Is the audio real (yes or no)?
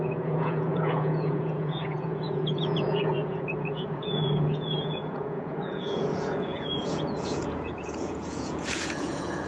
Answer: no